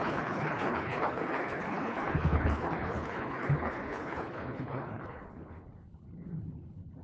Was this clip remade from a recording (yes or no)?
yes